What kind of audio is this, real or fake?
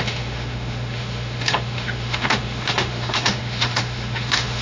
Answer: fake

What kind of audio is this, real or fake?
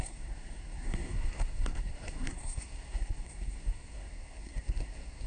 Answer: fake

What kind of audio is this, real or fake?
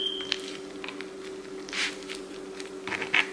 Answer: real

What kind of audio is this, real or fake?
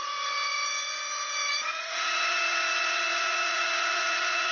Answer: fake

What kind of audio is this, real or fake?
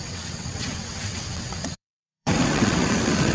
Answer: fake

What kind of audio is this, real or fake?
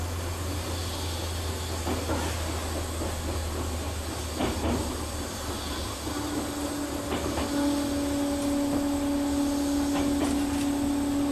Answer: real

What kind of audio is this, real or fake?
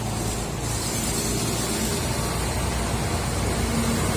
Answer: real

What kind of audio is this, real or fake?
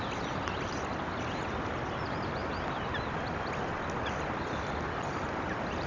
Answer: real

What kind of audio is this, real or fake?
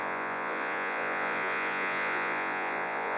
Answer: fake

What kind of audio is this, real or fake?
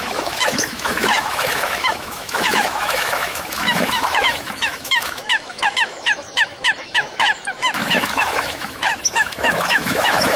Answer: fake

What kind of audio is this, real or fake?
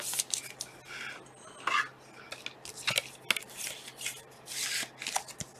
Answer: real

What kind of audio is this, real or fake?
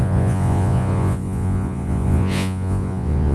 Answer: fake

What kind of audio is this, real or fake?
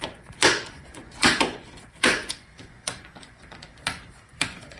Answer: fake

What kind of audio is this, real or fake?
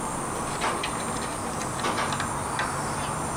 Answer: real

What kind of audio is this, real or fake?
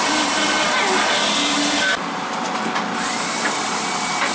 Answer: real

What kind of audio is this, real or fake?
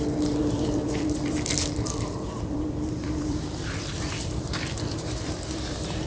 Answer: fake